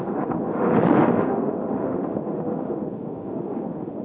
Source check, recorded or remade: remade